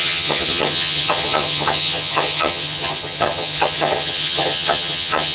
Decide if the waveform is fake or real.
fake